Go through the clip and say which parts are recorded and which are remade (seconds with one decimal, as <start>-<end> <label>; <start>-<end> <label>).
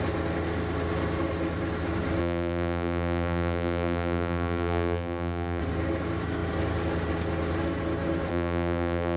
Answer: 0.0-2.2 recorded; 2.2-5.6 remade; 5.6-8.3 recorded; 8.3-9.2 remade